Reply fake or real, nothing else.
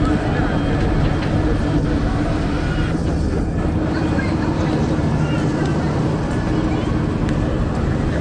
real